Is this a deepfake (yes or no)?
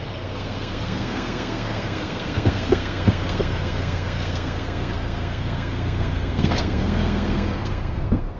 yes